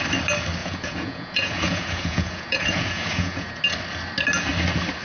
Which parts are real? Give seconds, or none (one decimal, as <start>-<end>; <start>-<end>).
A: 0.0-0.6; 3.6-5.0